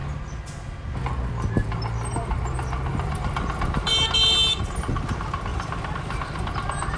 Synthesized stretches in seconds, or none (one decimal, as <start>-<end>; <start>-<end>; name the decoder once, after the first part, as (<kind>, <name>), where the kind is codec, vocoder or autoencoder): 2.9-3.9 (vocoder, BigVGAN v2); 5.5-6.5